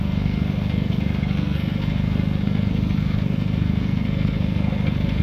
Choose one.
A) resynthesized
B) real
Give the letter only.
A